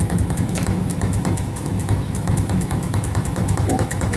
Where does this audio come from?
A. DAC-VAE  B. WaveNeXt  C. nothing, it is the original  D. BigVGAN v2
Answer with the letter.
A